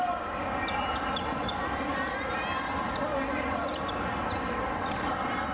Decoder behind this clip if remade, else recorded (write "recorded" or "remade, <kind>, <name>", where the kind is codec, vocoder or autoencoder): recorded